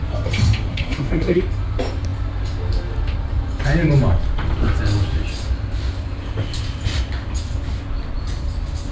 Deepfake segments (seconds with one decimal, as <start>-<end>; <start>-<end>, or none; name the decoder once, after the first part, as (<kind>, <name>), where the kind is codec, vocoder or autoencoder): 0.7-1.4 (codec, SNAC)